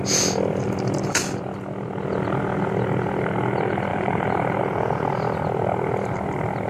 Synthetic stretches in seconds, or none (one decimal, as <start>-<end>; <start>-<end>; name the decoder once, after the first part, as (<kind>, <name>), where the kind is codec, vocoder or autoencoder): 3.9-4.6 (vocoder, BigVGAN v2)